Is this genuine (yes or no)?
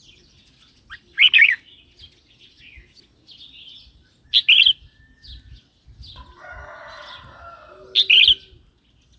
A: yes